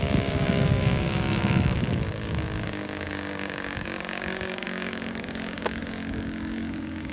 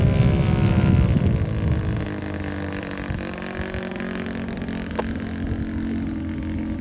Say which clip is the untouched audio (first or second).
second